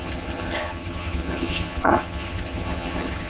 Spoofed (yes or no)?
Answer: yes